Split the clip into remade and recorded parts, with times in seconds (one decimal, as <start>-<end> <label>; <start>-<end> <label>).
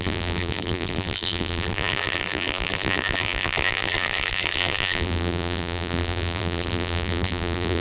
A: 0.0-7.8 remade